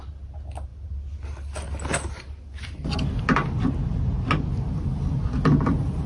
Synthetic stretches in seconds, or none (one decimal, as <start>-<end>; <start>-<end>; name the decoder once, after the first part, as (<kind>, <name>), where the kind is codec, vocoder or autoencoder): none